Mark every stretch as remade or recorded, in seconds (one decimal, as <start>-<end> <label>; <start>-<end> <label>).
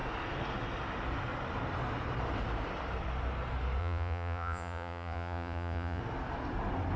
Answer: 0.0-3.8 recorded; 3.8-6.0 remade; 6.0-7.0 recorded